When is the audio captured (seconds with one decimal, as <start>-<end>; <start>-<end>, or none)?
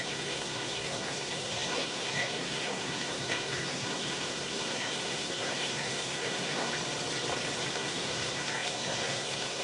6.7-7.7